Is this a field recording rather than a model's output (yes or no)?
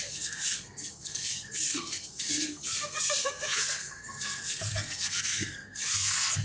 no